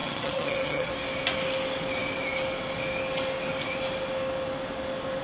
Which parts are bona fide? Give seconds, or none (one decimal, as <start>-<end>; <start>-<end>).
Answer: 0.9-5.2